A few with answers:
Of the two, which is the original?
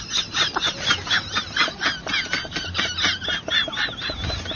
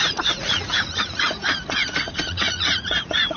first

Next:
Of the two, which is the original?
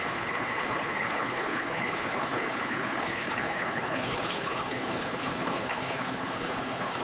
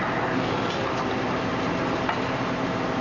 second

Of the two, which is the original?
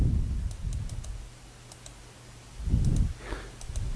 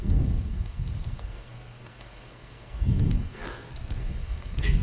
first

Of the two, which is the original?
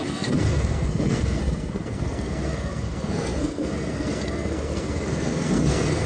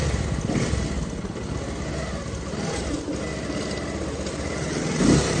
second